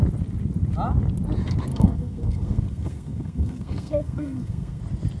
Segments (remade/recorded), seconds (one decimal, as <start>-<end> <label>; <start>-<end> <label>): 0.0-1.7 recorded; 1.7-4.8 remade; 4.8-5.2 recorded